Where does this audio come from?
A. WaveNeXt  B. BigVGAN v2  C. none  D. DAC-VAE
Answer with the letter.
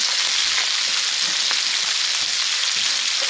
C